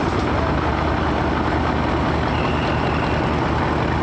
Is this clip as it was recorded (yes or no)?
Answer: yes